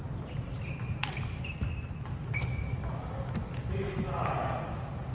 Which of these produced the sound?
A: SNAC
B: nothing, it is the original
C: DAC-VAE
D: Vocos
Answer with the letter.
B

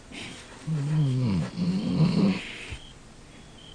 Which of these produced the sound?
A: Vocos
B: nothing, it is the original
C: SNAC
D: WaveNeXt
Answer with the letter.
B